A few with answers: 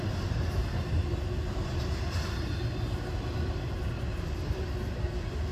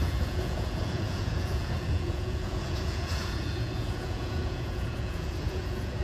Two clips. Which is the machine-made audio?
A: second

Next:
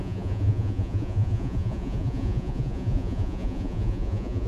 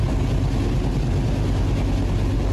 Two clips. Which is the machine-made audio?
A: first